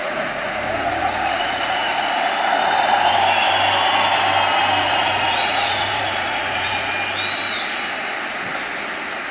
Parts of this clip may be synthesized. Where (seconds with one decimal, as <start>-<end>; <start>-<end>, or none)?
0.0-1.9; 4.8-6.9